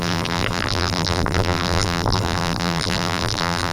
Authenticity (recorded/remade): remade